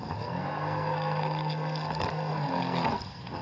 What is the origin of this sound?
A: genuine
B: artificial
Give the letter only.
B